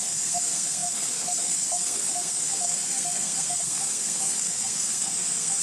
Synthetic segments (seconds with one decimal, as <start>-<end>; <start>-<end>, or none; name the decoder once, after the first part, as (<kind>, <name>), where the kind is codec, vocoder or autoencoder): 0.0-5.6 (codec, SNAC)